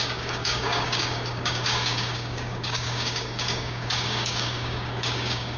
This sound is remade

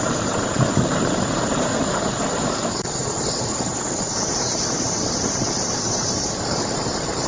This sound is remade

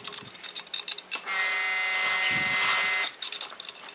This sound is recorded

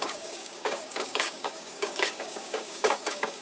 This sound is remade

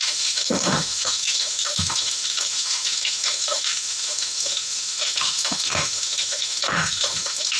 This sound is remade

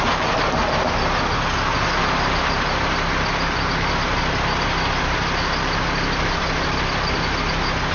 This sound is recorded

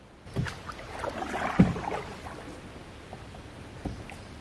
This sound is recorded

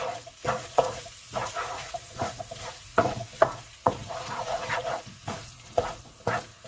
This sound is remade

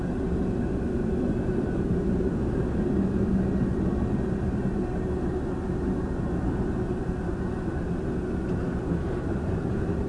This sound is recorded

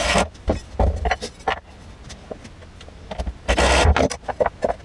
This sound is recorded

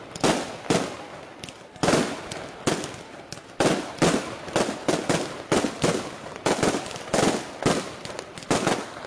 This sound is recorded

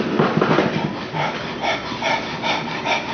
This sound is recorded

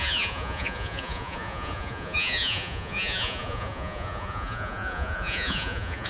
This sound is remade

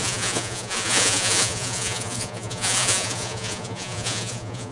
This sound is remade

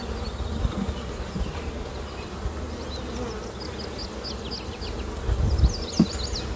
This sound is recorded